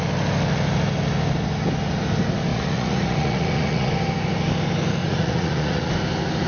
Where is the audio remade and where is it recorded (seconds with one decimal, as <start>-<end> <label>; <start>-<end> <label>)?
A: 0.0-2.5 recorded; 2.5-3.9 remade; 3.9-5.0 recorded; 5.0-5.9 remade; 5.9-6.5 recorded